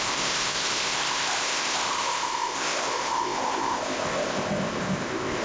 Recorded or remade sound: remade